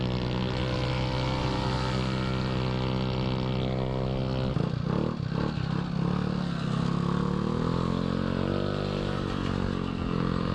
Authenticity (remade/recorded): recorded